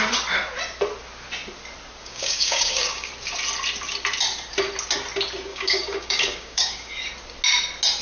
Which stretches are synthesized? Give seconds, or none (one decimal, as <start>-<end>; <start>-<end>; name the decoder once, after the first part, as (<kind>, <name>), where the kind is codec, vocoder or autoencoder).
2.0-3.1 (codec, DAC); 5.5-6.9